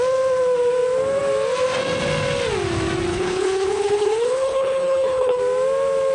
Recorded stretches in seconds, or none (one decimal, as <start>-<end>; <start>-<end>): 0.0-3.1; 5.4-6.1